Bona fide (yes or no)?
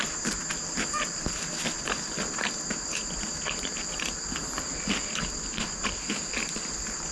yes